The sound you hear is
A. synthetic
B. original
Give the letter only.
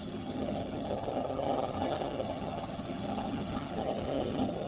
A